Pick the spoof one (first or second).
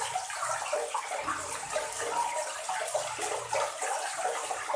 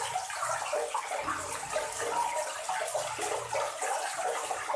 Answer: first